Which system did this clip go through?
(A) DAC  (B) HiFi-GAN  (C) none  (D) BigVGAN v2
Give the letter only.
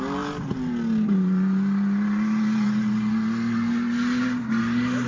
C